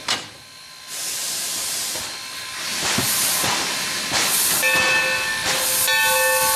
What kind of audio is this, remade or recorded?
recorded